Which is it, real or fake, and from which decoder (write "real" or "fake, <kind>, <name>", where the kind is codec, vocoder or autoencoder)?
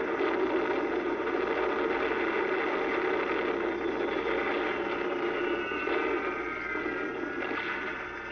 real